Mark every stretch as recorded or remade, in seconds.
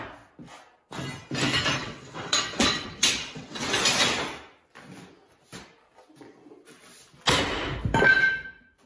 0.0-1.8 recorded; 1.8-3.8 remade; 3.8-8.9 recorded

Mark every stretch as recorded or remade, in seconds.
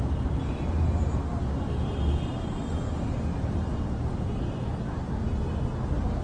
0.0-6.2 recorded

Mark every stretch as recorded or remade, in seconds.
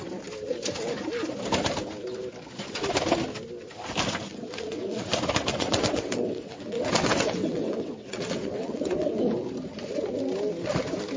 0.0-4.3 recorded; 4.3-5.0 remade; 5.0-5.5 recorded; 5.5-9.2 remade; 9.2-11.2 recorded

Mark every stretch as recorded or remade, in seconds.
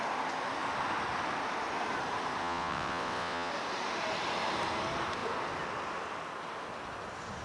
0.0-2.4 recorded; 2.4-3.5 remade; 3.5-7.4 recorded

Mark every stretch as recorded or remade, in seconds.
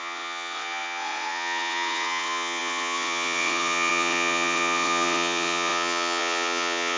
0.0-7.0 remade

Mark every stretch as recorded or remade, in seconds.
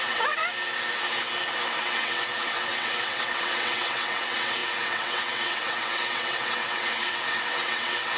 0.0-0.4 remade; 0.4-1.8 recorded; 1.8-8.2 remade